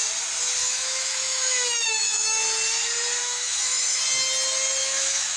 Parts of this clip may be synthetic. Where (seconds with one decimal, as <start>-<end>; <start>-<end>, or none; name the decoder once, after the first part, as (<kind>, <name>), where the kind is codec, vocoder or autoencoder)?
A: 0.6-2.4 (autoencoder, DAC-VAE); 3.2-4.0; 4.8-5.4